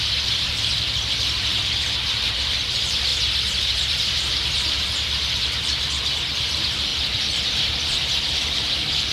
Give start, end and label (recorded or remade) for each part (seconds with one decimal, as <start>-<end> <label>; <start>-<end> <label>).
0.0-3.1 remade; 3.1-3.6 recorded; 3.6-9.1 remade